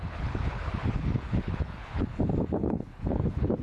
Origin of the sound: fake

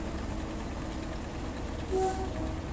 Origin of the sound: real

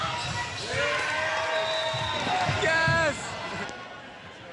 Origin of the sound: real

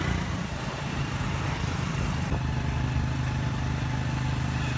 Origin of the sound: real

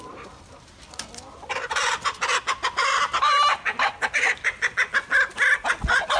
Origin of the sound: real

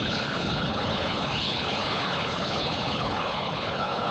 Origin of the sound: fake